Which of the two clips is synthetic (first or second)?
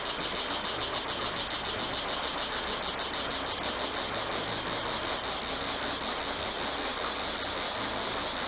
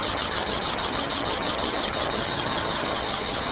second